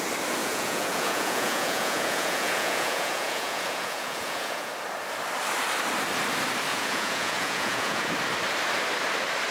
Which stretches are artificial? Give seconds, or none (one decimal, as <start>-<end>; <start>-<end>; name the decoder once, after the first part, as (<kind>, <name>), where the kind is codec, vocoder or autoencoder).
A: 0.4-4.7 (vocoder, Vocos); 6.7-8.1